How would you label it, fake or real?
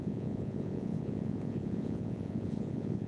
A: fake